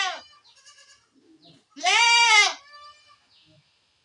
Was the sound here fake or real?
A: real